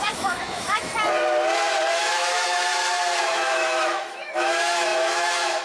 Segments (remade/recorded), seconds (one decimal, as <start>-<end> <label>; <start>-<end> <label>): 0.0-0.9 remade; 0.9-1.9 recorded; 1.9-2.7 remade; 2.7-3.2 recorded; 3.2-5.6 remade